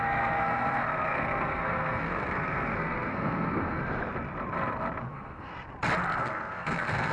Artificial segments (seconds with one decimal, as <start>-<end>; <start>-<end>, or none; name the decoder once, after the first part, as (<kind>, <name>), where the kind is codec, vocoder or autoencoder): 0.0-3.8 (codec, SNAC); 5.1-5.5; 6.2-7.1